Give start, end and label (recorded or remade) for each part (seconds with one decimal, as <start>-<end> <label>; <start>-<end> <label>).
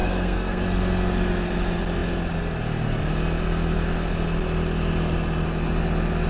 0.0-0.6 remade; 0.6-6.3 recorded